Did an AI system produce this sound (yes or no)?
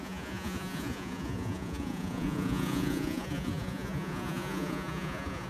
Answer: yes